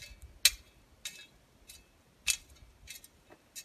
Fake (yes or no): no